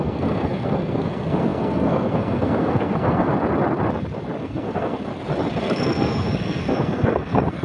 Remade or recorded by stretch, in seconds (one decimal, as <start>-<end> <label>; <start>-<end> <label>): 0.0-3.3 remade; 3.3-4.4 recorded; 4.4-5.1 remade; 5.1-5.6 recorded; 5.6-7.6 remade